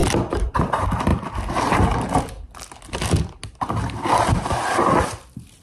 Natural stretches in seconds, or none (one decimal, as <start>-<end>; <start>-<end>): 0.6-5.6